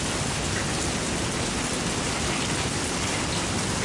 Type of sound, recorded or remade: recorded